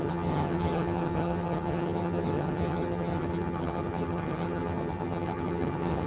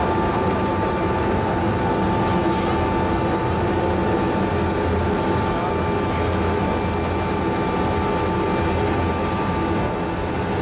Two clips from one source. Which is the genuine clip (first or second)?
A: second